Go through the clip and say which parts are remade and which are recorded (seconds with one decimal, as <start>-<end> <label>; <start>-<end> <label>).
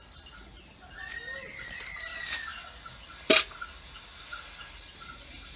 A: 0.0-5.6 recorded